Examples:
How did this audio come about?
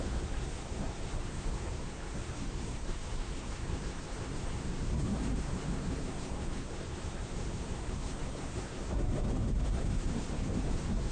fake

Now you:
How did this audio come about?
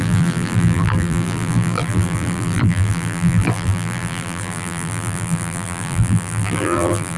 fake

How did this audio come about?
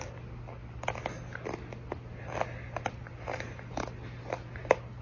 real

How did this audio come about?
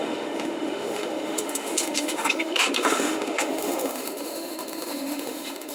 fake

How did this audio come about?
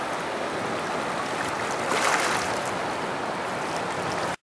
real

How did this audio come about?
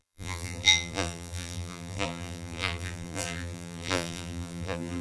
fake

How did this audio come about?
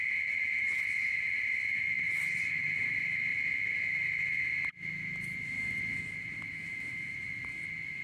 fake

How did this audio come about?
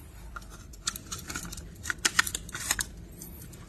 fake